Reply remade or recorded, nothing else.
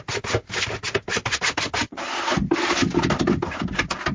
recorded